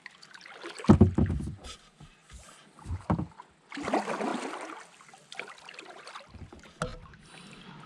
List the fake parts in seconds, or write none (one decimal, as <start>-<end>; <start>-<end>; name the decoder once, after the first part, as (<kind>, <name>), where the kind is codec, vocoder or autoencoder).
2.2-3.3 (vocoder, BigVGAN v2); 4.3-6.0